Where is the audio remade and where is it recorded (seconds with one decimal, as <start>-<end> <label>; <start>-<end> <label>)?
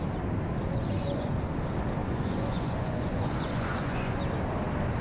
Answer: 0.0-0.7 recorded; 0.7-1.3 remade; 1.3-2.0 recorded; 2.0-4.2 remade; 4.2-5.0 recorded